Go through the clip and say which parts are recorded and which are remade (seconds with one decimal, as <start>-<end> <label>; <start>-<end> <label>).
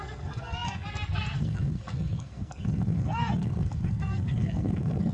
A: 0.0-5.1 remade